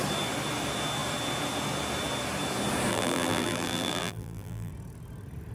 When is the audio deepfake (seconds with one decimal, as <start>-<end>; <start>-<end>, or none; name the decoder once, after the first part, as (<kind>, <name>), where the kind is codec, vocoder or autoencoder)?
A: 2.9-4.7 (vocoder, BigVGAN v2)